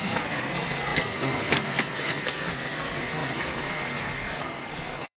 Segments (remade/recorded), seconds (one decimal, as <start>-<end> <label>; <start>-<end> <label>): 0.0-5.2 remade